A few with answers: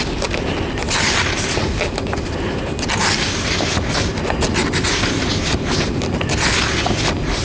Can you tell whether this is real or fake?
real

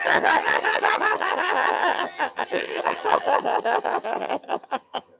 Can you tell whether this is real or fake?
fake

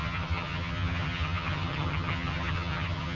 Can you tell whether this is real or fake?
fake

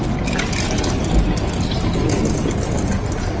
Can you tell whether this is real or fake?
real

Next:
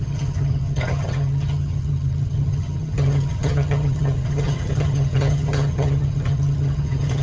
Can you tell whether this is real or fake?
fake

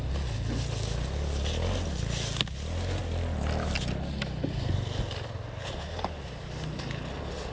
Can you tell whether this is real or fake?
real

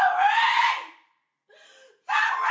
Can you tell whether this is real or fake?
real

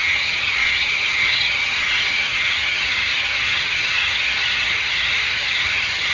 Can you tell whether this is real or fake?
fake